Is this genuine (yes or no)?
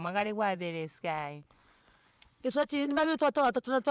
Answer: no